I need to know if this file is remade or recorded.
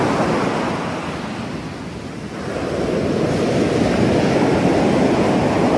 recorded